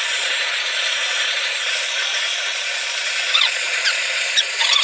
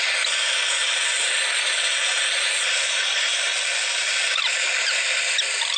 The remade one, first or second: first